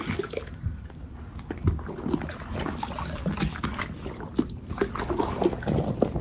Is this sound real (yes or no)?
yes